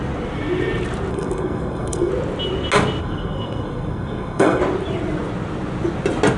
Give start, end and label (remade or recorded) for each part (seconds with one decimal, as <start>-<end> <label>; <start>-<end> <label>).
0.0-1.1 recorded; 1.1-2.1 remade; 2.1-3.0 recorded; 3.0-4.6 remade; 4.6-6.4 recorded